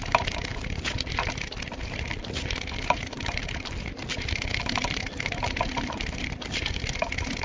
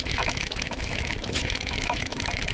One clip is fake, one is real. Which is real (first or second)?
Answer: first